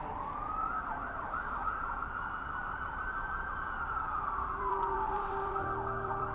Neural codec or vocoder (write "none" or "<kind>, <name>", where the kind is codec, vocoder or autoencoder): vocoder, BigVGAN v2